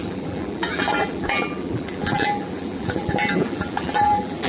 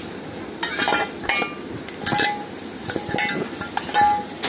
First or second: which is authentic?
second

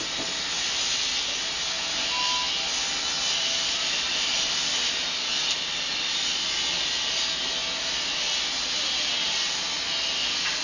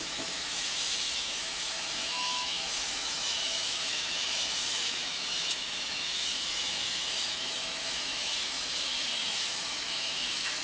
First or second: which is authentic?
first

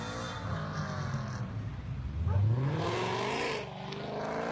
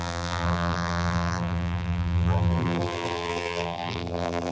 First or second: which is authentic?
first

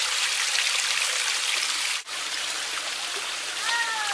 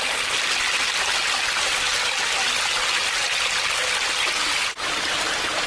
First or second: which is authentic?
second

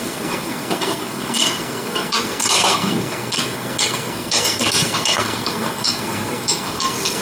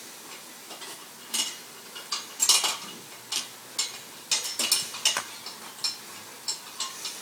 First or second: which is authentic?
second